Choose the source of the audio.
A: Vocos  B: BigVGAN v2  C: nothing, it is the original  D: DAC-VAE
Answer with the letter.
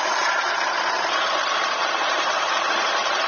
B